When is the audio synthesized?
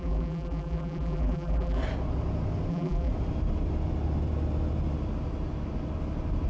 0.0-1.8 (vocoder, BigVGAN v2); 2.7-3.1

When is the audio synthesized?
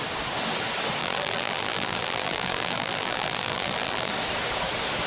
1.0-4.1 (vocoder, BigVGAN v2)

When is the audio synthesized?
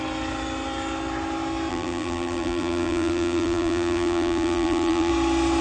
1.7-5.1 (vocoder, BigVGAN v2)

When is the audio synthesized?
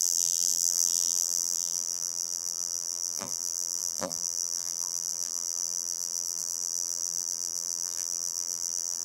0.0-9.0 (vocoder, BigVGAN v2)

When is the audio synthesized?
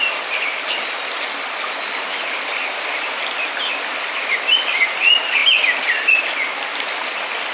none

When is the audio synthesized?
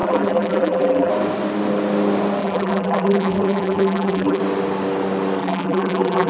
0.0-1.1 (vocoder, BigVGAN v2); 2.4-4.4; 5.4-6.3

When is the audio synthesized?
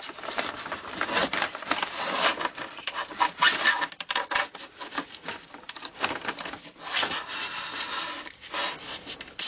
0.0-9.5 (vocoder, BigVGAN v2)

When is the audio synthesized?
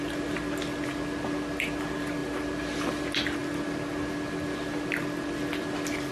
2.2-3.0 (vocoder, BigVGAN v2)